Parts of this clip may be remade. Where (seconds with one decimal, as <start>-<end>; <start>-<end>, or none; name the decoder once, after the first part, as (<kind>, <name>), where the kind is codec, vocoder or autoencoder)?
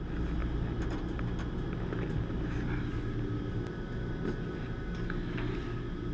none